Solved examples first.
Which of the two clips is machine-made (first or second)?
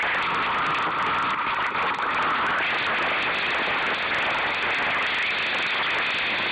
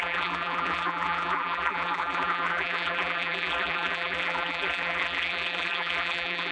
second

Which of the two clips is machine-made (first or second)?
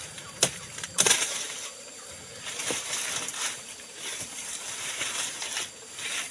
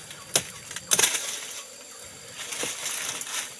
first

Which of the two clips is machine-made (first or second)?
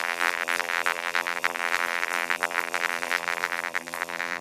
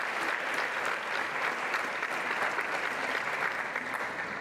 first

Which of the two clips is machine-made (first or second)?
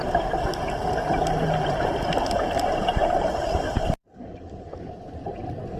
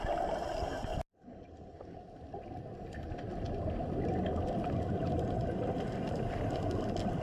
first